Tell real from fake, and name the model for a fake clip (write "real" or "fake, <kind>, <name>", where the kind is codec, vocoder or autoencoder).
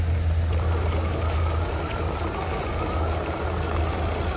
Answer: real